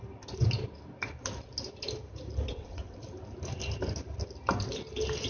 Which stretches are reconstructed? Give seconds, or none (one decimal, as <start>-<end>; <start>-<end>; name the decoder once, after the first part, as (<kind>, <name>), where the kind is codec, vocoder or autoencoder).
2.5-3.0 (vocoder, WaveNeXt)